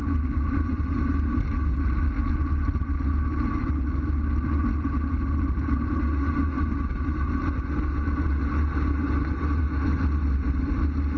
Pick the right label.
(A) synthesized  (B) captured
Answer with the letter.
B